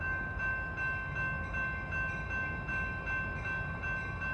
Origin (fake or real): real